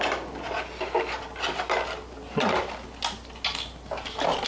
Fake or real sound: real